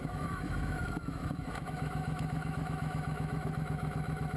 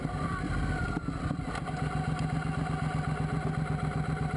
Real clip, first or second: second